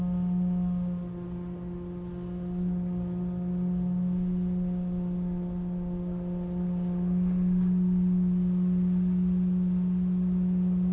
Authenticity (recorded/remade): recorded